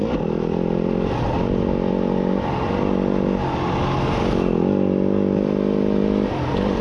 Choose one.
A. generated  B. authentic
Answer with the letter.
B